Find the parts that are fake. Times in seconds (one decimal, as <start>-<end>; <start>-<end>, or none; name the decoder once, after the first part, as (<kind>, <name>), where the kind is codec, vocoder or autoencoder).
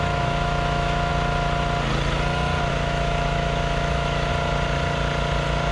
0.0-1.1 (autoencoder, DAC-VAE); 2.7-4.3